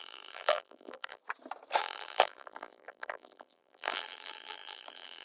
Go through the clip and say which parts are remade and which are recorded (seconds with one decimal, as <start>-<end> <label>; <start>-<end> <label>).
0.0-1.2 remade; 1.2-1.8 recorded; 1.8-5.2 remade